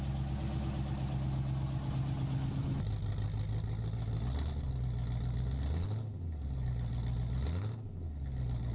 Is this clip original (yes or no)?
yes